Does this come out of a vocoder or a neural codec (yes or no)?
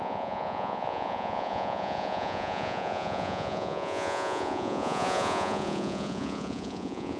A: yes